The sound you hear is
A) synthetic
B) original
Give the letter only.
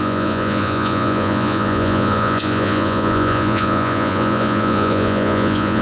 A